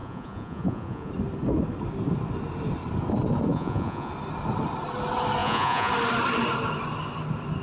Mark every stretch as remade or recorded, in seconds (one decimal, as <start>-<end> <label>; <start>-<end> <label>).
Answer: 0.0-1.1 remade; 1.1-3.5 recorded; 3.5-4.1 remade; 4.1-5.4 recorded; 5.4-5.9 remade; 5.9-7.6 recorded